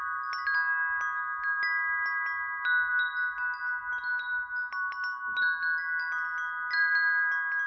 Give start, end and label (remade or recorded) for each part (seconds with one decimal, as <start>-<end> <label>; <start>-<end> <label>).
0.0-7.7 recorded